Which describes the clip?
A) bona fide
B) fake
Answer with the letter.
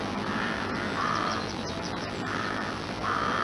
B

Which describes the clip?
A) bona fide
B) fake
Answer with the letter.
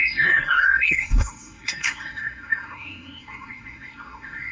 B